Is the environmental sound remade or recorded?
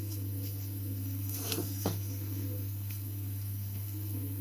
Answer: remade